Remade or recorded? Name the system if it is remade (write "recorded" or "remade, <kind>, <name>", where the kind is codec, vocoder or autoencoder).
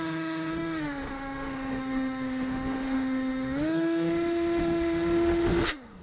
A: remade, autoencoder, DAC-VAE